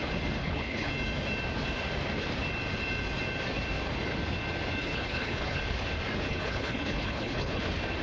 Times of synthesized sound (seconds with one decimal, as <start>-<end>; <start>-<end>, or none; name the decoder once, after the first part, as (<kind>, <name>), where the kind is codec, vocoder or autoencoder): 0.4-0.9 (codec, HILCodec); 4.8-5.6; 6.3-7.6